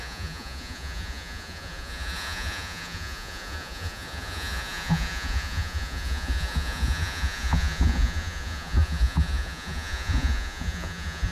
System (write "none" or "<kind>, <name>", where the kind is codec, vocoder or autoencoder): vocoder, Vocos